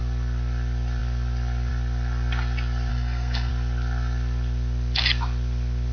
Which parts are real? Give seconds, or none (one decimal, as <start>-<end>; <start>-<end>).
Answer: 0.0-2.9; 3.5-5.9